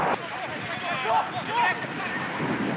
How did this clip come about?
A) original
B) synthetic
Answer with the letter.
A